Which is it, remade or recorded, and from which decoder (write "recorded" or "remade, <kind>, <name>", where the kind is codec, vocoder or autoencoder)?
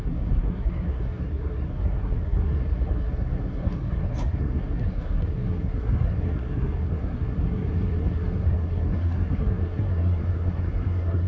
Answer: remade, codec, SNAC